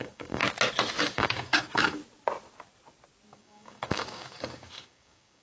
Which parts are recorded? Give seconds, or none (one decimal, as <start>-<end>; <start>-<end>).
0.4-1.0; 2.0-3.3